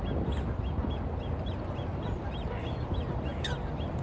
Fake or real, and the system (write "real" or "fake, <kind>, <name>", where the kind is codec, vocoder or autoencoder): real